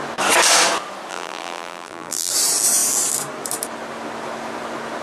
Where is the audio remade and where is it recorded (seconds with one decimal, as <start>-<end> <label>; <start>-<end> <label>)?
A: 0.0-1.1 recorded; 1.1-2.3 remade; 2.3-5.0 recorded